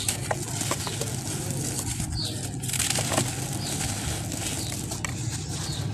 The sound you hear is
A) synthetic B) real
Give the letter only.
B